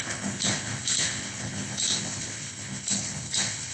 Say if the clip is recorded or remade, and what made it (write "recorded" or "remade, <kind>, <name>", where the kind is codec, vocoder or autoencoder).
remade, codec, HILCodec